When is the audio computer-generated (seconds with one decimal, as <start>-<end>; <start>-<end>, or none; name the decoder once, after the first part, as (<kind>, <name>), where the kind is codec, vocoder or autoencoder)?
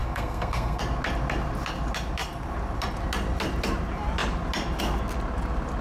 0.0-0.8 (codec, SNAC)